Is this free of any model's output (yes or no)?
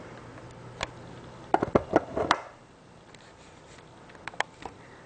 yes